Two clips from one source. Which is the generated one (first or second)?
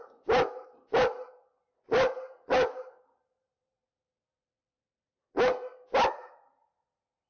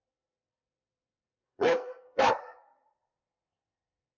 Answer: second